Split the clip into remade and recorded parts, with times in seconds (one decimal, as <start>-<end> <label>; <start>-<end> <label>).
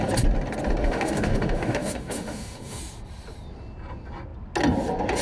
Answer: 0.0-0.8 recorded; 0.8-2.8 remade; 2.8-5.2 recorded